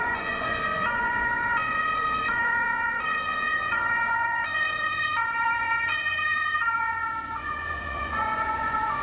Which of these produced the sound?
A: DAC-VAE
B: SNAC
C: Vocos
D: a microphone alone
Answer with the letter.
C